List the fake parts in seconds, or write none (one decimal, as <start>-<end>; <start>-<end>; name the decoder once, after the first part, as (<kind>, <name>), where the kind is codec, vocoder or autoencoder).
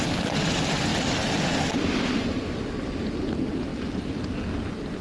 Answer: 0.0-0.9 (vocoder, BigVGAN v2); 3.3-5.0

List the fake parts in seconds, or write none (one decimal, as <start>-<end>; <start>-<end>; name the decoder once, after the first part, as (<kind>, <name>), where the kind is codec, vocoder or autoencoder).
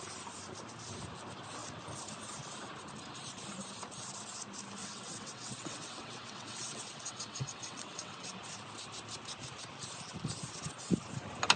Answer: 4.8-8.3 (vocoder, WaveNeXt)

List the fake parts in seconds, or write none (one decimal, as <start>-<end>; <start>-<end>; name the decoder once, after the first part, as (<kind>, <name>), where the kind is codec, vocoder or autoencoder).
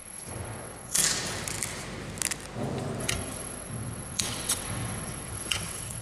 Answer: 0.0-1.0 (vocoder, WaveNeXt); 3.0-6.0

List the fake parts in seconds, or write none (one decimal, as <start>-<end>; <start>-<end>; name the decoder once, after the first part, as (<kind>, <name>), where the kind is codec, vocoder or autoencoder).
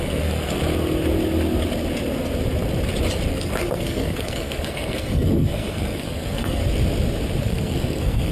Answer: 0.0-0.6 (codec, SNAC); 3.3-6.6; 7.4-8.3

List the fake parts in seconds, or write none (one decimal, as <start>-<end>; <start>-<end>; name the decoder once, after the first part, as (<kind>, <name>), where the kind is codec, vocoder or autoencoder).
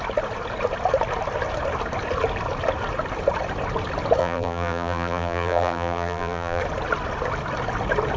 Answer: 4.2-6.6 (vocoder, BigVGAN v2)